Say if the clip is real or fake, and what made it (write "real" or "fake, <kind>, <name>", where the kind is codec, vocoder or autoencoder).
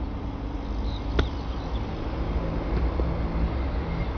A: real